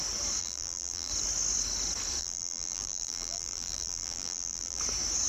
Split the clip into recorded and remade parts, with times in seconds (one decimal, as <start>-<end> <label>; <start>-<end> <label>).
0.0-0.4 recorded; 0.4-1.1 remade; 1.1-2.2 recorded; 2.2-4.8 remade; 4.8-5.3 recorded